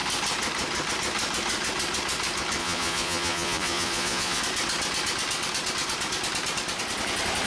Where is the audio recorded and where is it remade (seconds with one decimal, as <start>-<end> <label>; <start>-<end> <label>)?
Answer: 0.0-2.6 recorded; 2.6-4.4 remade; 4.4-7.5 recorded